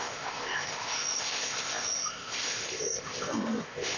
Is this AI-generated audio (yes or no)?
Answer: yes